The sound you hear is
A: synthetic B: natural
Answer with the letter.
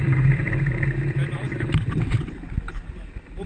B